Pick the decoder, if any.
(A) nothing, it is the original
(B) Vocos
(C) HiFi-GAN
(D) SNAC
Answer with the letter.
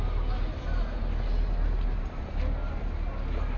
A